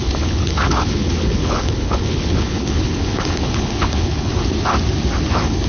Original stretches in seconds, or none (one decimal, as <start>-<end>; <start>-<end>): 4.3-5.3